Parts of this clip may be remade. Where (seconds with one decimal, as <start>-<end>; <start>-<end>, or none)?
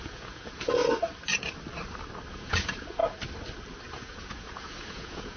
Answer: 0.0-0.8; 2.3-3.0; 3.8-5.4